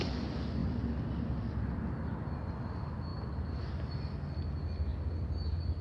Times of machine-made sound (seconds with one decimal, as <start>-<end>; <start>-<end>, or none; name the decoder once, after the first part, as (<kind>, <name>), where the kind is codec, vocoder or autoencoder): 0.6-1.9 (vocoder, BigVGAN v2); 3.1-3.7; 4.9-5.8